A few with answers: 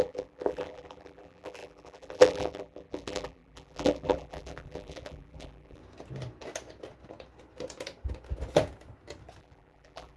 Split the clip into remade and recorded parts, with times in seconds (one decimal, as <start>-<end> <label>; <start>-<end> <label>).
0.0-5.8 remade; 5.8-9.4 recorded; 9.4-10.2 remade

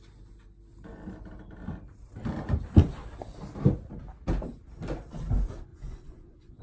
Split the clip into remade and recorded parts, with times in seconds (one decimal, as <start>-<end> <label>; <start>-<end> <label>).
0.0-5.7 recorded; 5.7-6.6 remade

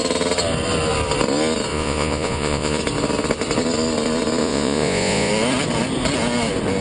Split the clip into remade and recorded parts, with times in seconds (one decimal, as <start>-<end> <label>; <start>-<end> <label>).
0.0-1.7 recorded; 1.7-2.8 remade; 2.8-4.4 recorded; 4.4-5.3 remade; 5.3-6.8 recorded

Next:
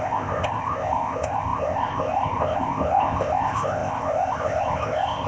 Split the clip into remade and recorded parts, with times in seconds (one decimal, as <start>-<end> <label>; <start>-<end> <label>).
0.0-5.3 remade

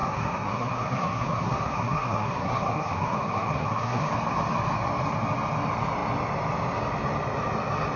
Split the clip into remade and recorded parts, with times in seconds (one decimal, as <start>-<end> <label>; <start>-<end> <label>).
0.0-4.1 remade; 4.1-8.0 recorded